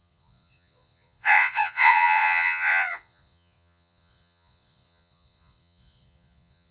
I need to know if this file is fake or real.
fake